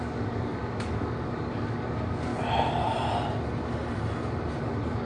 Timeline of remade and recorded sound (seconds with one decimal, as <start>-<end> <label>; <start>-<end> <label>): 0.0-2.3 remade; 2.3-4.6 recorded; 4.6-5.0 remade